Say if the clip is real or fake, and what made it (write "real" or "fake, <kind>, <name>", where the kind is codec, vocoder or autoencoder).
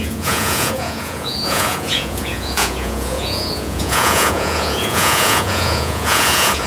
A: fake, vocoder, Vocos